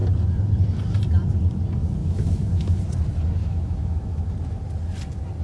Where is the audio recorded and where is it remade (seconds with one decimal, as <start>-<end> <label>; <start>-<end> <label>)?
0.0-2.0 recorded; 2.0-2.8 remade; 2.8-3.4 recorded; 3.4-4.3 remade; 4.3-5.4 recorded